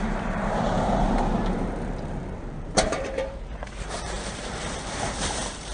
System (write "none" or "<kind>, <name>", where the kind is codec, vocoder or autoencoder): vocoder, BigVGAN v2